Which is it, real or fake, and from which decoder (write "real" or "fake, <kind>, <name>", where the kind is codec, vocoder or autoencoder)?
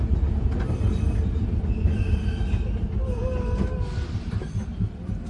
real